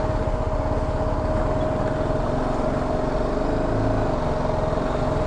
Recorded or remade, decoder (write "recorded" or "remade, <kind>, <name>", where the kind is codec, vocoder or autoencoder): recorded